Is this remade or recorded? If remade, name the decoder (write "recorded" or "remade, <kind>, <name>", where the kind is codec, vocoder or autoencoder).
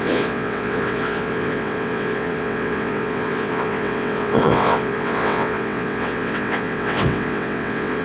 remade, vocoder, WaveNeXt